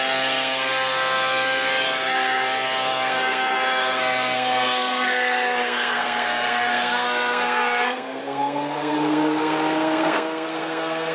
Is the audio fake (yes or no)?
yes